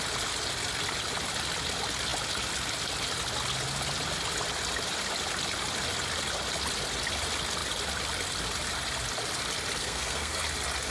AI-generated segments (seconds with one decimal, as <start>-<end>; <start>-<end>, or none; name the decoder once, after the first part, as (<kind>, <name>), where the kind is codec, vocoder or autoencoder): 9.8-10.4 (codec, SNAC)